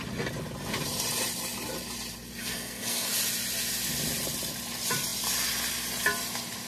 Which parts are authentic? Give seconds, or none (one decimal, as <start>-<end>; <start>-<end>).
0.0-2.4; 3.1-6.7